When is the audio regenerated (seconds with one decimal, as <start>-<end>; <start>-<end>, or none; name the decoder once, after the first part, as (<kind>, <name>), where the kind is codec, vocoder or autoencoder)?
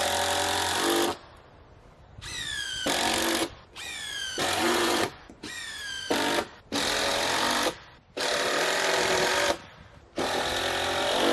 3.4-5.8 (vocoder, Vocos)